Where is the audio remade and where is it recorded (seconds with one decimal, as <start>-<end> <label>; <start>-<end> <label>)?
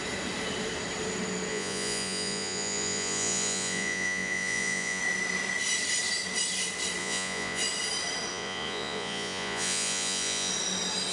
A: 0.0-1.5 recorded; 1.5-5.0 remade; 5.0-7.0 recorded; 7.0-7.6 remade; 7.6-8.3 recorded; 8.3-10.5 remade; 10.5-11.1 recorded